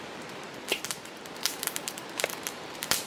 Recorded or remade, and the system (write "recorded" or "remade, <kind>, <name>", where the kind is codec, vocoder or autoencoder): remade, vocoder, BigVGAN v2